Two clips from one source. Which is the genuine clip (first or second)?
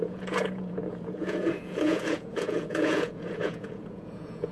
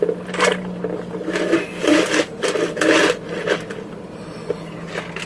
second